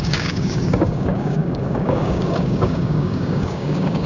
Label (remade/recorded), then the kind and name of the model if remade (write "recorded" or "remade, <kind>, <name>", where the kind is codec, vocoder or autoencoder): remade, codec, DAC